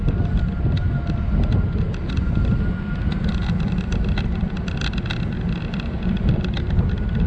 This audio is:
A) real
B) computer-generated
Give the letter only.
A